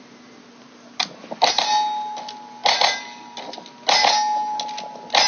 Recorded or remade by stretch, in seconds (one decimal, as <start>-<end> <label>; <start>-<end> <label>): 0.0-5.3 recorded